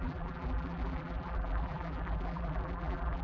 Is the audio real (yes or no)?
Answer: no